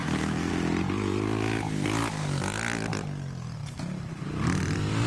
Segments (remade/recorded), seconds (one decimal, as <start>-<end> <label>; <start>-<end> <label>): 0.0-0.5 remade; 0.5-5.1 recorded